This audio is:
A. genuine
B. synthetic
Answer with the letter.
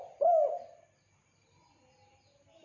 A